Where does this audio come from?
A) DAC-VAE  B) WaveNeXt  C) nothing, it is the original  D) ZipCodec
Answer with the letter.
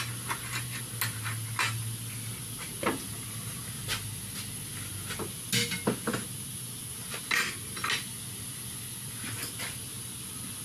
C